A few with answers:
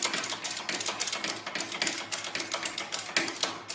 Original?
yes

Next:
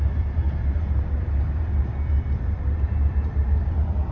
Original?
no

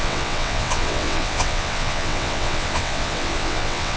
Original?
no